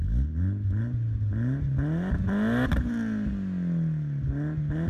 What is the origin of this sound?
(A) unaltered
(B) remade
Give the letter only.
A